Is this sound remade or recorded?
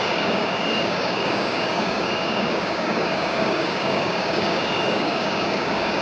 remade